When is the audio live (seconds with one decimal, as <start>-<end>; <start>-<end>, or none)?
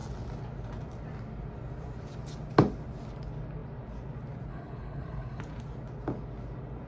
0.0-4.5; 5.4-6.9